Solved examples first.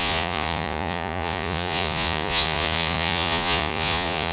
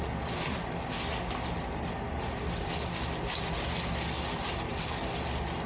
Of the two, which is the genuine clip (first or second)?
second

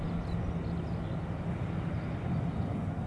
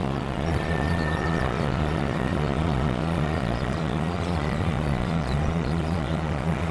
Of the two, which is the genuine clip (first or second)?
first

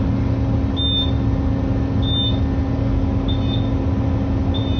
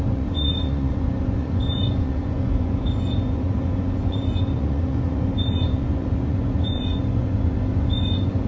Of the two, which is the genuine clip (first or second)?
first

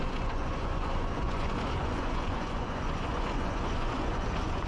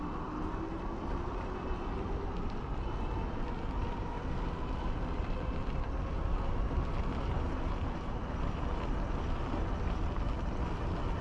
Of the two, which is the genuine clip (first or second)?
second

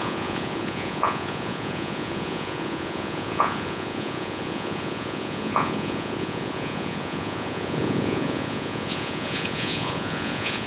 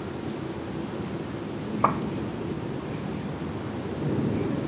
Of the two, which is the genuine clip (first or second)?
second